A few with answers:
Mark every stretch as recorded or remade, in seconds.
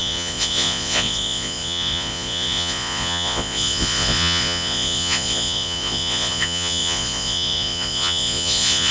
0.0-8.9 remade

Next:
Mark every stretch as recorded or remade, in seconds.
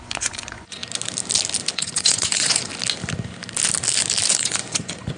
0.0-0.8 remade; 0.8-1.7 recorded; 1.7-2.7 remade; 2.7-4.3 recorded; 4.3-5.2 remade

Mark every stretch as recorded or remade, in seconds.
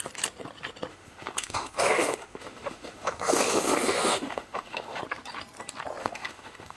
0.0-0.9 recorded; 0.9-5.0 remade; 5.0-6.0 recorded; 6.0-6.8 remade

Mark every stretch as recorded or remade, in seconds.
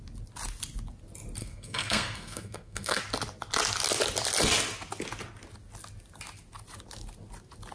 0.0-1.4 recorded; 1.4-3.0 remade; 3.0-7.7 recorded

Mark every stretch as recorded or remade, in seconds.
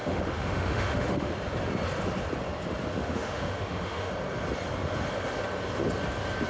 0.0-1.3 remade; 1.3-2.9 recorded; 2.9-4.1 remade; 4.1-6.5 recorded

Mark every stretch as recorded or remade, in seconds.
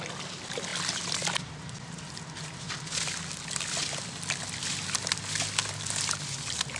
0.0-6.8 recorded